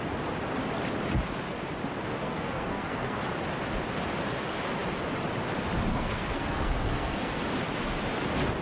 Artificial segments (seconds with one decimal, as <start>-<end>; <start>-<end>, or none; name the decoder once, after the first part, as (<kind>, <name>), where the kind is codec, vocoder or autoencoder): 2.2-3.2 (codec, SNAC); 5.9-7.4